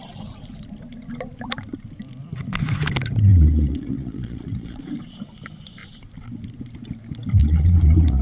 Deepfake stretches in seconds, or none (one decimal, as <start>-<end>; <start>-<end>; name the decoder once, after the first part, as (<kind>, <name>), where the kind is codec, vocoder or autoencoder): 3.3-4.8 (vocoder, Vocos); 7.4-8.2